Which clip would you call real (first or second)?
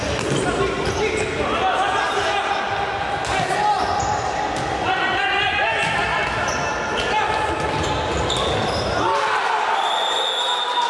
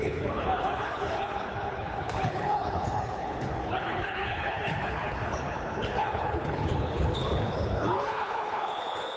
first